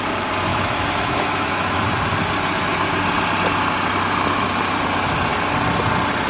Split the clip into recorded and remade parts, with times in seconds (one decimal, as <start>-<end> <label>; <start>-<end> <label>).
0.0-0.5 recorded; 0.5-1.8 remade; 1.8-6.3 recorded